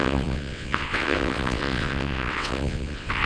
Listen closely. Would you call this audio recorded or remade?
remade